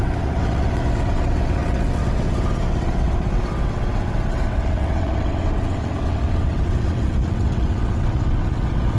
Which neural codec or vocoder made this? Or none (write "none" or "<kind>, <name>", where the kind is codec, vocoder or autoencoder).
vocoder, WaveNeXt